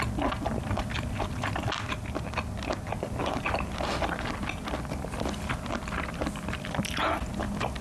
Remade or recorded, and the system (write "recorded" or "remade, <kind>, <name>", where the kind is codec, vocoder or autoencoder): recorded